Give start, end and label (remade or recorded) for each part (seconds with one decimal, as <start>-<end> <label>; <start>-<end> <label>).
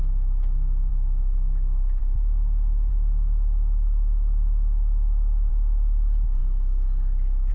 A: 0.0-0.9 recorded; 0.9-2.0 remade; 2.0-2.9 recorded; 2.9-5.5 remade; 5.5-7.5 recorded